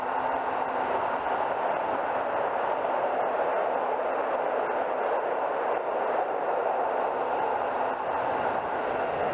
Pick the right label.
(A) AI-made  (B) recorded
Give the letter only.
B